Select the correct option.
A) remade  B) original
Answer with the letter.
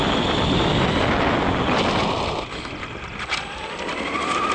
B